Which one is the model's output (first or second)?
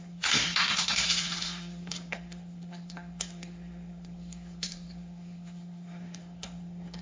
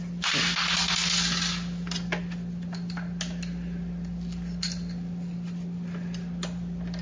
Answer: first